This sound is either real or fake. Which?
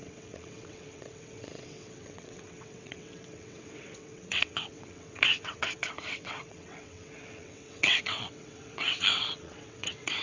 fake